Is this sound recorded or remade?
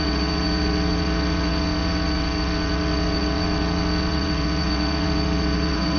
remade